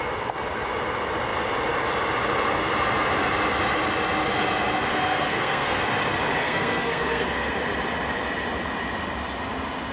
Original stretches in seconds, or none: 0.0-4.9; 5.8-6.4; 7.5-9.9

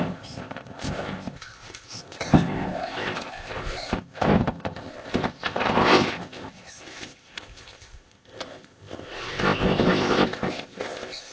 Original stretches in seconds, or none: none

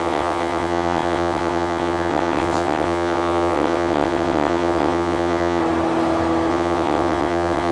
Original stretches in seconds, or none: 5.6-6.5

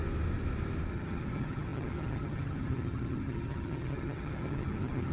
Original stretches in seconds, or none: 0.0-0.9

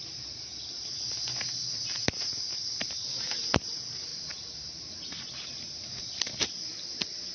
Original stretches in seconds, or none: 0.0-4.1; 6.5-7.3